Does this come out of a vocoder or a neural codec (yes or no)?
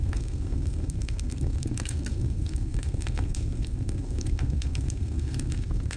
yes